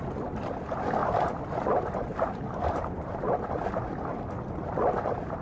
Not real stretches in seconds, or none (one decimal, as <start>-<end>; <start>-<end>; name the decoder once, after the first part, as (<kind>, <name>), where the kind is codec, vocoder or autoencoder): 1.0-3.5 (vocoder, BigVGAN v2)